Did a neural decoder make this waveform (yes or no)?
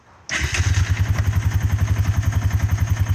no